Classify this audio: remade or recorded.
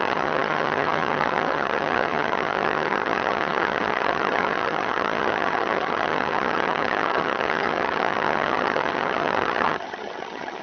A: remade